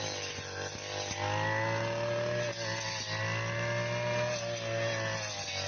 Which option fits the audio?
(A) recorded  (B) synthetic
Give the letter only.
A